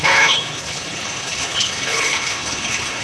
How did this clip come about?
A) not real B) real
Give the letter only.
A